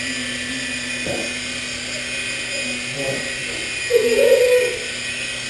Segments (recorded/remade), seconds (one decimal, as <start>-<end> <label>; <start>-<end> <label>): 0.0-5.5 recorded